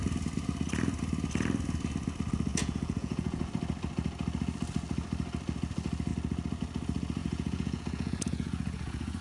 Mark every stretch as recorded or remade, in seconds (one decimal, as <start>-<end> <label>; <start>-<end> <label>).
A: 0.0-2.5 recorded; 2.5-3.5 remade; 3.5-7.2 recorded; 7.2-9.2 remade